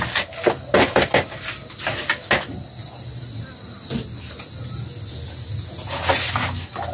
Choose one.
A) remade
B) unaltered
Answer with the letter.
B